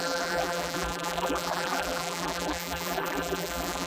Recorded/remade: remade